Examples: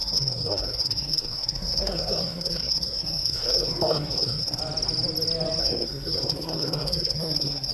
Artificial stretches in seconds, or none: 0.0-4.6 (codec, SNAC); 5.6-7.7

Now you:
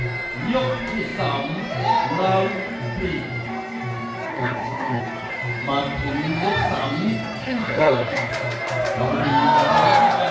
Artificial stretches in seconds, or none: 4.3-5.0 (codec, SNAC); 7.4-8.3